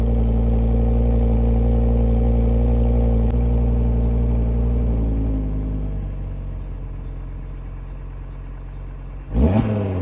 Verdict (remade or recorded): recorded